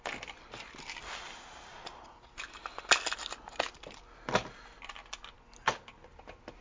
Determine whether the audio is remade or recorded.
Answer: recorded